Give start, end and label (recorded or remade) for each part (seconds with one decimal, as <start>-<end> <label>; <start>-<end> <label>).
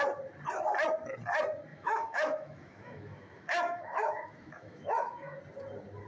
0.0-1.7 recorded; 1.7-5.4 remade; 5.4-6.1 recorded